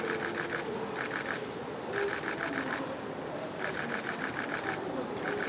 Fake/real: real